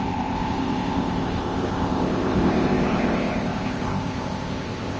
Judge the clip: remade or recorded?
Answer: remade